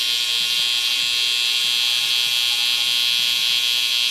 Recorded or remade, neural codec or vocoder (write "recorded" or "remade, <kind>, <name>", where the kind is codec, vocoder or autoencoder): recorded